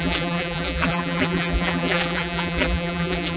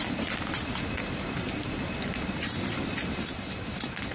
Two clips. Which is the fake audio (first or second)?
first